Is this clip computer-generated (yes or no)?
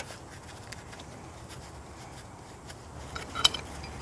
no